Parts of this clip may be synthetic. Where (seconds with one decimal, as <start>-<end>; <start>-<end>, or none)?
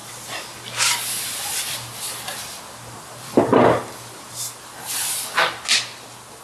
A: 0.0-3.4